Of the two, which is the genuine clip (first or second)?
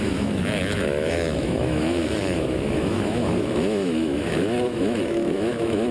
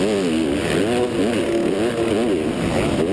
second